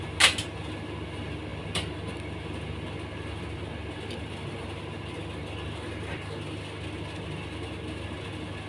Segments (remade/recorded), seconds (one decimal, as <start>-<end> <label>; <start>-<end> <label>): 0.0-8.7 recorded